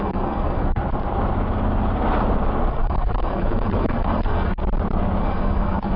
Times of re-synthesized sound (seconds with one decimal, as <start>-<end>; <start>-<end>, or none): 0.0-0.8; 2.7-4.6; 5.2-6.0